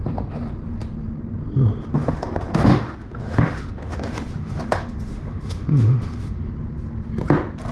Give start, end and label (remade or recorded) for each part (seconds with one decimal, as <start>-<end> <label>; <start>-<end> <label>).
0.0-1.9 recorded; 1.9-6.5 remade; 6.5-7.7 recorded